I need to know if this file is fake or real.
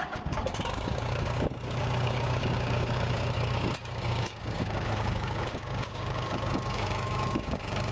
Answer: fake